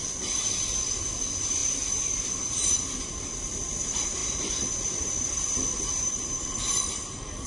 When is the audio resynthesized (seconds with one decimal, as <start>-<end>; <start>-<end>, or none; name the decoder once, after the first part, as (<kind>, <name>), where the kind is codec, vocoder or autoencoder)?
1.6-2.7 (vocoder, BigVGAN v2); 4.2-6.4